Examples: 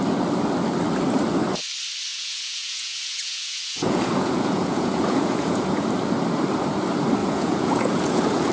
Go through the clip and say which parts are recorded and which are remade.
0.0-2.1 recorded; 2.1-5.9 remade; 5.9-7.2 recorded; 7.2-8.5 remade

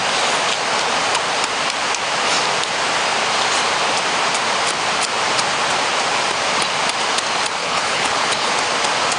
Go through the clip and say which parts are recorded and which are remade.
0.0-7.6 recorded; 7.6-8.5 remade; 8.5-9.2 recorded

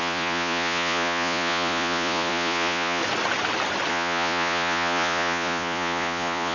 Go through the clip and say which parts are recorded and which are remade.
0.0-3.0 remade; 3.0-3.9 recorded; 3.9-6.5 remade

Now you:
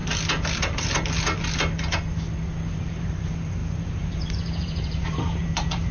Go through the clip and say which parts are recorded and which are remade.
0.0-2.8 recorded; 2.8-5.9 remade

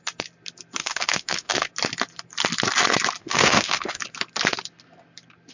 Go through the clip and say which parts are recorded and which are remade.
0.0-0.8 recorded; 0.8-1.7 remade; 1.7-3.2 recorded; 3.2-4.0 remade; 4.0-5.5 recorded